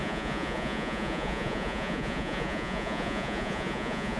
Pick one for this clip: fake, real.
fake